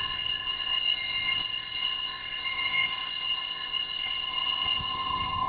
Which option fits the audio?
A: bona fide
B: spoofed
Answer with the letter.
B